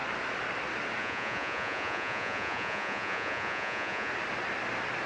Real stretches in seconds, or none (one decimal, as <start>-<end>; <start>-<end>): 0.0-1.0; 4.1-5.1